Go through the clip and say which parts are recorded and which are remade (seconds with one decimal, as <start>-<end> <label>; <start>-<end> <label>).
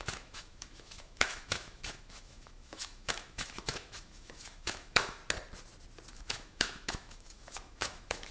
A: 0.0-5.2 remade; 5.2-6.1 recorded; 6.1-8.3 remade